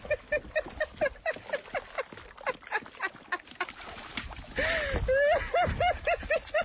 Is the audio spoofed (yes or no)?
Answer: no